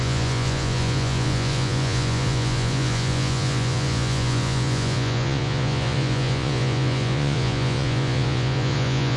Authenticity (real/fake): fake